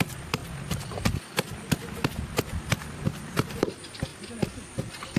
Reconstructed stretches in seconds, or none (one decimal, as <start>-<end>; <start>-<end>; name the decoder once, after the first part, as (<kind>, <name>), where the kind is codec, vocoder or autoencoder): 0.0-0.4 (vocoder, BigVGAN v2); 3.5-4.1